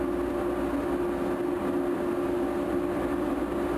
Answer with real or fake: real